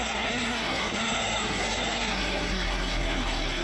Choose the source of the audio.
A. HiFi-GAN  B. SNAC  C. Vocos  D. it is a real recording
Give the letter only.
B